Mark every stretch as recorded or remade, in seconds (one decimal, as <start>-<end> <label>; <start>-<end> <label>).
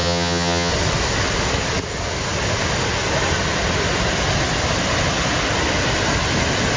0.0-0.7 remade; 0.7-6.8 recorded